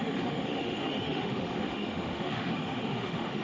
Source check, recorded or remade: remade